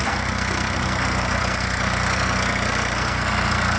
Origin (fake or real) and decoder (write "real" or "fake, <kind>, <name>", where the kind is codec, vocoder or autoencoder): fake, codec, SNAC